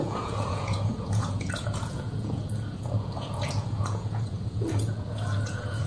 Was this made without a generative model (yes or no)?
no